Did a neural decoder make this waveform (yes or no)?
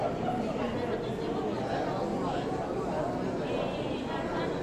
no